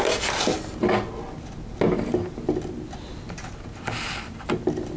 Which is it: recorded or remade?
recorded